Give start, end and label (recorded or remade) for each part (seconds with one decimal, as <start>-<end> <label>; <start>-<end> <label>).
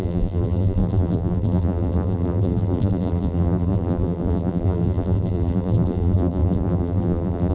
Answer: 0.0-7.5 remade